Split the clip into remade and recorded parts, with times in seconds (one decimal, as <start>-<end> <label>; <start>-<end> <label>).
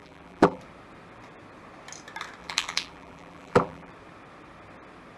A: 0.0-0.6 remade; 0.6-2.4 recorded; 2.4-3.9 remade; 3.9-5.2 recorded